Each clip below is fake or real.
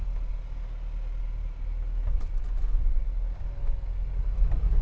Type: real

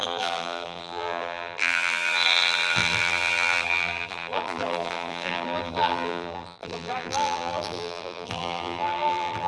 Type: fake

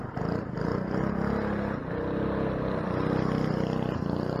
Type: real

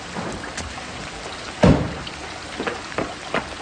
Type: real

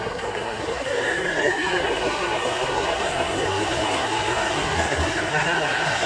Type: fake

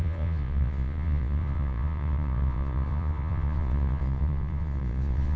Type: fake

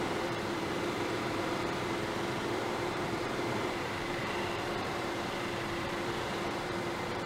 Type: fake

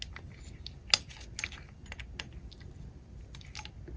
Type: real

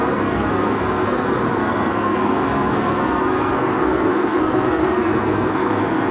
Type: fake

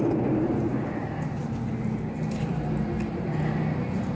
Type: real